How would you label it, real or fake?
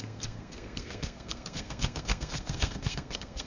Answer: fake